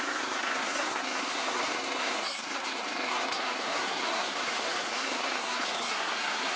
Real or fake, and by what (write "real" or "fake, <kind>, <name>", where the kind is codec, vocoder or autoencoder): fake, codec, SNAC